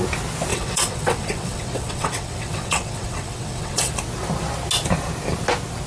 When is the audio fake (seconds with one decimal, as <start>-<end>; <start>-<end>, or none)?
0.5-3.9